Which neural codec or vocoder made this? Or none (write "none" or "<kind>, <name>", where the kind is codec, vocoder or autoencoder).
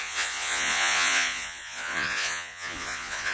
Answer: vocoder, Vocos